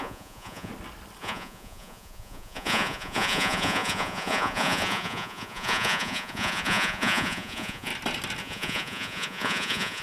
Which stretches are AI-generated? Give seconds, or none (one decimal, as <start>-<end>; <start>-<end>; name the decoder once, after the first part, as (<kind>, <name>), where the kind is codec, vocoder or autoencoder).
0.0-0.7 (vocoder, Vocos); 1.2-7.9; 8.4-10.0